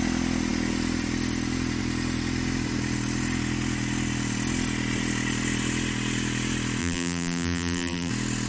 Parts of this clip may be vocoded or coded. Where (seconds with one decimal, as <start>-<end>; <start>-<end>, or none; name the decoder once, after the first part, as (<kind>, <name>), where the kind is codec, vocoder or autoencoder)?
6.8-8.1 (vocoder, BigVGAN v2)